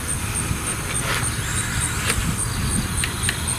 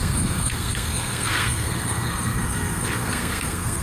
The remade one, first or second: second